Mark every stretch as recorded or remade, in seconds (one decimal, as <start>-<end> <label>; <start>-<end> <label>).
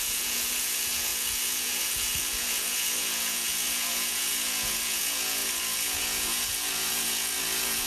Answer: 0.0-7.9 remade